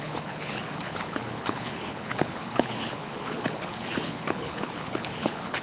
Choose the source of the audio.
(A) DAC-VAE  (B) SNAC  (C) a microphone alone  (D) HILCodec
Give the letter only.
D